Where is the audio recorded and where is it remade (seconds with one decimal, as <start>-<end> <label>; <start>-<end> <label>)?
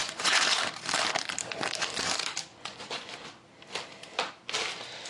0.0-0.6 remade; 0.6-2.5 recorded; 2.5-3.1 remade; 3.1-5.1 recorded